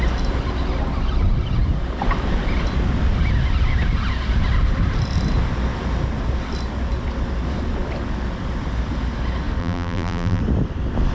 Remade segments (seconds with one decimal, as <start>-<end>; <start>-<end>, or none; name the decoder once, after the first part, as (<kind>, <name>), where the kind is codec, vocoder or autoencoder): 9.6-10.4 (vocoder, BigVGAN v2)